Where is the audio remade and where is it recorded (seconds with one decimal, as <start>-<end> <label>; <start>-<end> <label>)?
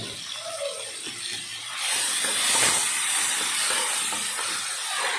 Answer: 0.0-5.2 recorded